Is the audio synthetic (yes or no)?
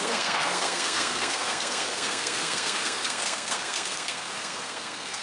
yes